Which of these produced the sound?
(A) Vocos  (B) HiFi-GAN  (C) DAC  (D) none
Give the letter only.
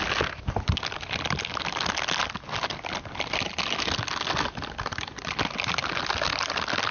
D